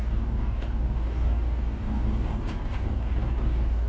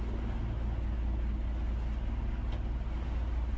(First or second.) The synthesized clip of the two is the first